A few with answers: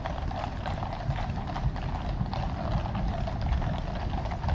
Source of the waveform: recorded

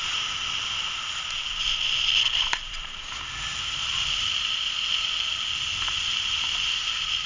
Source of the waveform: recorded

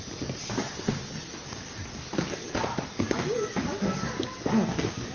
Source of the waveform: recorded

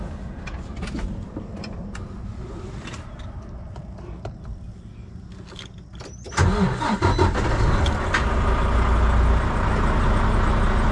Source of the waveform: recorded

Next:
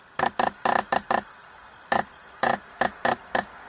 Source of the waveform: recorded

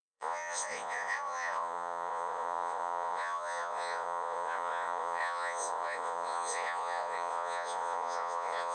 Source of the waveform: remade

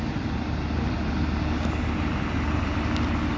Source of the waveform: recorded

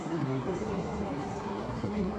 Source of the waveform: remade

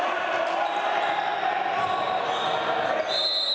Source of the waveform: recorded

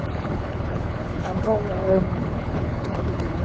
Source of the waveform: remade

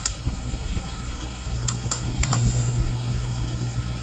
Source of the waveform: remade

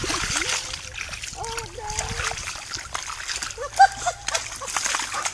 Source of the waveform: recorded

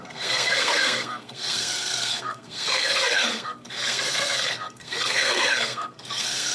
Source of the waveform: remade